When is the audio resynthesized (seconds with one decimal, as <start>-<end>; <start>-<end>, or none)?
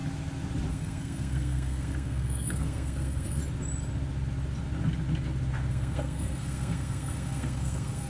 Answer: 0.7-3.4; 5.7-8.1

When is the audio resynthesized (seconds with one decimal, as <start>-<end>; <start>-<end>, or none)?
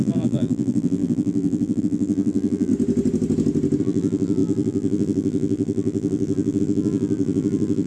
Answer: 0.0-2.7; 3.8-7.9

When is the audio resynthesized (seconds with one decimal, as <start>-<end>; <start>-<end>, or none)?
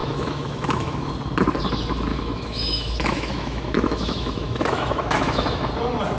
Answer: 0.0-1.1; 2.1-5.7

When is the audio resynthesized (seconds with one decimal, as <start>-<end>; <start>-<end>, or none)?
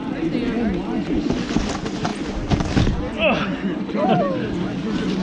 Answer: none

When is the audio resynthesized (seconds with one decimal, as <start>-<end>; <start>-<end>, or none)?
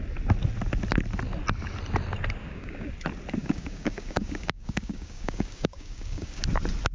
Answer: 2.4-2.9; 3.4-6.4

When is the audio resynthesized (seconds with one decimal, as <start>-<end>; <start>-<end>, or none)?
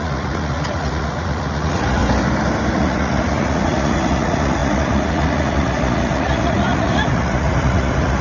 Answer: 0.0-2.0; 2.7-8.2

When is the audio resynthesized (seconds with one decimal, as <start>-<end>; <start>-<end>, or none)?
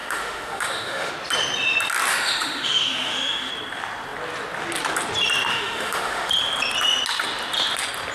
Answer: 0.0-1.1; 2.1-3.5; 5.5-6.3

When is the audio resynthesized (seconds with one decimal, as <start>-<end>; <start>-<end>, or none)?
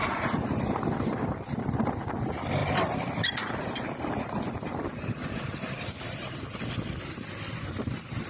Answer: 0.0-8.3